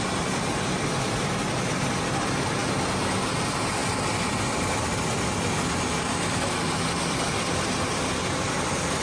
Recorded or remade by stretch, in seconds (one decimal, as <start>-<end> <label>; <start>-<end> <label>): 0.0-9.0 recorded